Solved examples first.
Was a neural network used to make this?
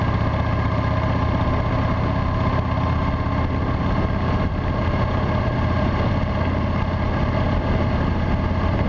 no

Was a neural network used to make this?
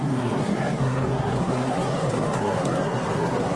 yes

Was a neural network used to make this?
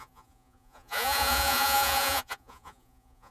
yes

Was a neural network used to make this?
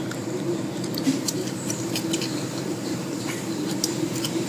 yes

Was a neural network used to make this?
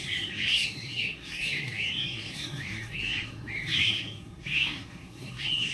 yes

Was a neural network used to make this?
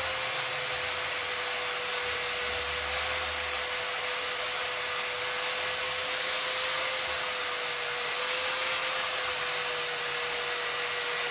no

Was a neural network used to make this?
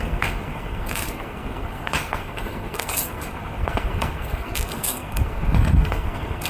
yes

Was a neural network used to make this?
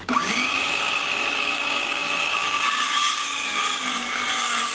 yes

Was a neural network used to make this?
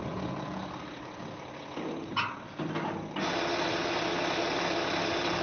no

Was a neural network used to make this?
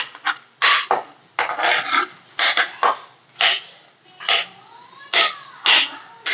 no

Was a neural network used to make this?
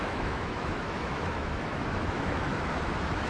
yes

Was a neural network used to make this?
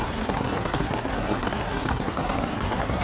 yes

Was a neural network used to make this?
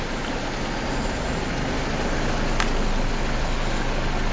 no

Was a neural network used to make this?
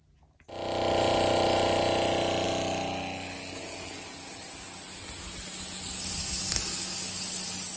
no